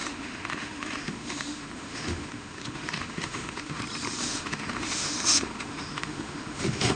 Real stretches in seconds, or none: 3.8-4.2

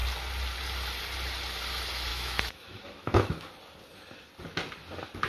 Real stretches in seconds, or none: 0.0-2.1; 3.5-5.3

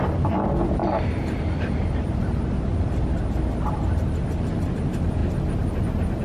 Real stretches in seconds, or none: 0.0-6.2

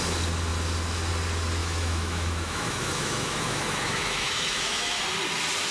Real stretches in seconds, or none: 0.0-1.6; 5.0-5.7

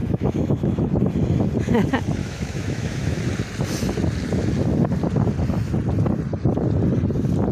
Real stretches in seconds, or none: 1.0-2.2; 3.2-7.5

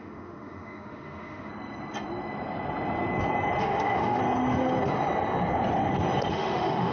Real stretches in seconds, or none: 1.5-3.6; 4.2-6.3

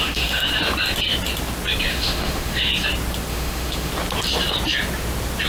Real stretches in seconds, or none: 0.5-1.9; 2.7-3.3; 3.9-5.5